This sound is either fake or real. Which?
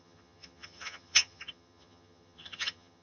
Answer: fake